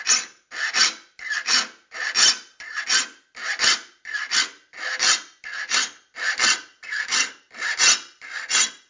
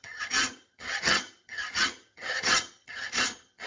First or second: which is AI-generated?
second